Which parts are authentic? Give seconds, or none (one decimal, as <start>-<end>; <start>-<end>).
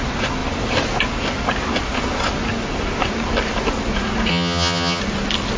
0.0-4.3; 5.0-5.6